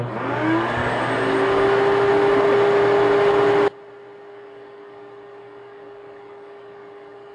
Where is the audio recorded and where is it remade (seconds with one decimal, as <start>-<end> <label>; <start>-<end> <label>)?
0.0-0.8 remade; 0.8-4.3 recorded; 4.3-7.3 remade